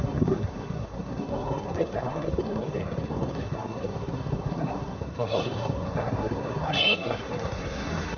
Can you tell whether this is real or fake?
fake